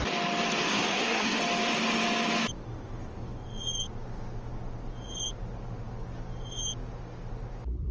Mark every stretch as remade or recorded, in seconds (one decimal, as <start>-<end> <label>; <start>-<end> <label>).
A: 0.0-0.7 recorded; 0.7-1.4 remade; 1.4-7.9 recorded